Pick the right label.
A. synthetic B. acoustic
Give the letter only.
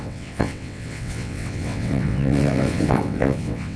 A